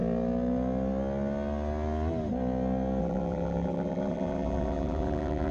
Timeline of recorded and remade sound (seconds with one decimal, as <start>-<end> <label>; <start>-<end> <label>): 0.0-3.0 recorded; 3.0-5.5 remade